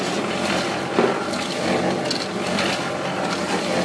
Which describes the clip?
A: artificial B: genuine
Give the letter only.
B